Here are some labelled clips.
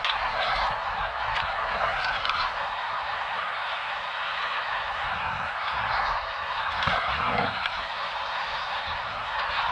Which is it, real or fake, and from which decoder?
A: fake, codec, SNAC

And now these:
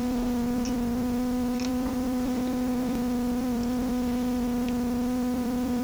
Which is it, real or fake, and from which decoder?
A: fake, vocoder, BigVGAN v2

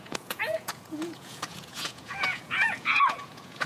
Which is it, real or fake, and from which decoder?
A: fake, vocoder, Vocos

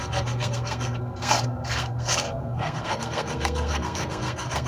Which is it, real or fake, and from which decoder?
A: fake, codec, SNAC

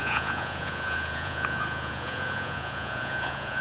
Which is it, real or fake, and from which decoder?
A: fake, vocoder, Vocos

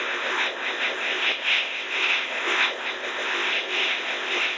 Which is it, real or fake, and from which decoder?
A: fake, codec, ZipCodec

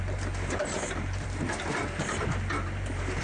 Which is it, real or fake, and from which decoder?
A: fake, vocoder, BigVGAN v2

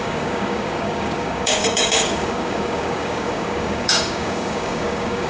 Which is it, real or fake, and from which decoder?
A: fake, codec, DAC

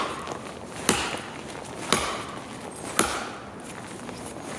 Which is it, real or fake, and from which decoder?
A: real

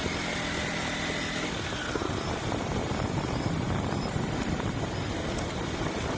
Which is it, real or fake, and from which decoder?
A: real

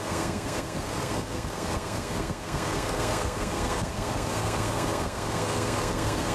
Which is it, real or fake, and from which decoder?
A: fake, codec, SNAC